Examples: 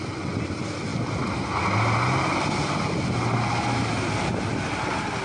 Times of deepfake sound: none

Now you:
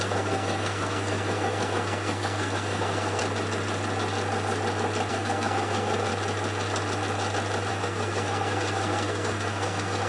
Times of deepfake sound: 0.0-3.2; 5.1-6.1; 7.7-10.1